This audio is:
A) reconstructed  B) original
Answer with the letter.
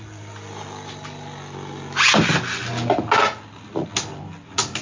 B